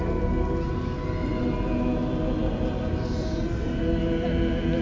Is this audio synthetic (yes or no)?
no